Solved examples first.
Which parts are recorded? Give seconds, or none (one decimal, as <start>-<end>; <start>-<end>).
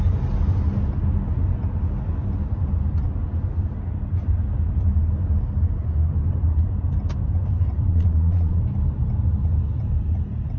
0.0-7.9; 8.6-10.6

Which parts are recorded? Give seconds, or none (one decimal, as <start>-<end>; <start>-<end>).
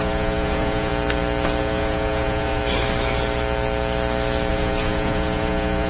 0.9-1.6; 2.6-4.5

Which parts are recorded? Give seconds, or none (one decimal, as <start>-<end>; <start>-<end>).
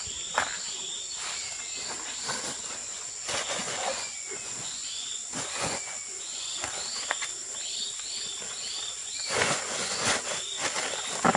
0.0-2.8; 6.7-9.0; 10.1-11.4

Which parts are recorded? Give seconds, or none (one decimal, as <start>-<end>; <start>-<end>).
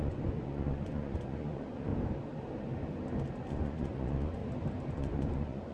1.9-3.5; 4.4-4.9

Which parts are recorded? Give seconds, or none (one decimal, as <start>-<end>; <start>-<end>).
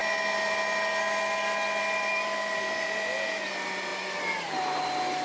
0.0-5.2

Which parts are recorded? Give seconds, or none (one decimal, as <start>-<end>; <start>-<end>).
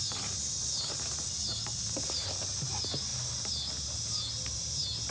0.0-5.1